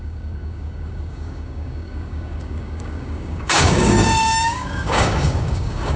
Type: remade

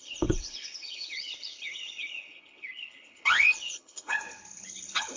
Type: remade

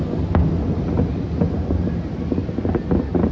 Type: recorded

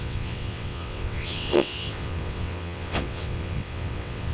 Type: remade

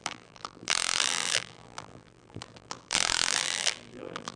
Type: remade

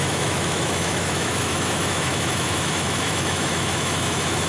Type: remade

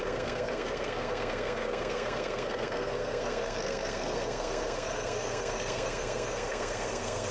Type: remade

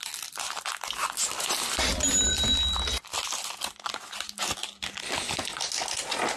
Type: recorded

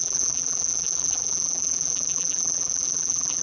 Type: remade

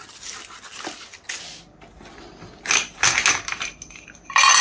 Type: recorded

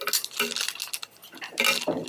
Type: recorded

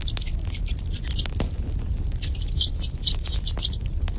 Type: recorded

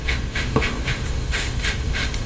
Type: remade